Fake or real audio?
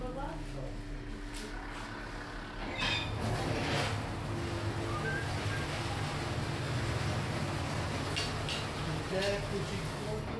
real